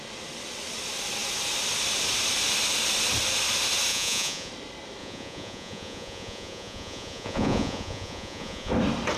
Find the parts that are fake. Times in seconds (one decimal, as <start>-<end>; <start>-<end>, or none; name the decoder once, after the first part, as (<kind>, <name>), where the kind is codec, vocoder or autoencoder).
3.9-4.5 (vocoder, Vocos); 5.0-8.7